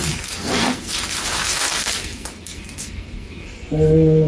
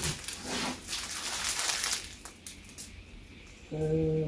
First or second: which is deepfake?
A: first